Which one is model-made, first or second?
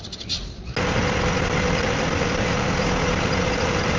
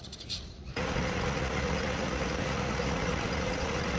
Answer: second